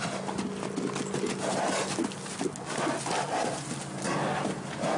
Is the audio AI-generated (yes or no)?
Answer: no